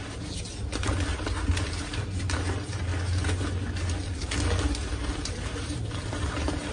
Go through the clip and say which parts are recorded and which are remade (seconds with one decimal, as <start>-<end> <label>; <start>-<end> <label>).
0.0-2.9 remade; 2.9-4.1 recorded; 4.1-6.7 remade